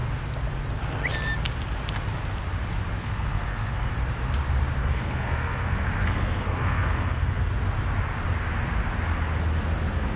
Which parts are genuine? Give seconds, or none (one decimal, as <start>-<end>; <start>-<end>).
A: 0.0-3.0; 3.9-4.8; 7.5-10.2

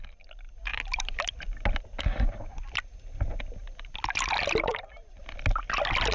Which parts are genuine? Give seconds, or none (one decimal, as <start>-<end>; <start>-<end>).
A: 0.0-6.1